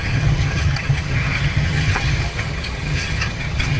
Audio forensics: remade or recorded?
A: remade